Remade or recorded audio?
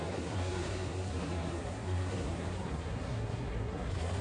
remade